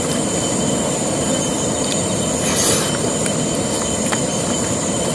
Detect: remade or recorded recorded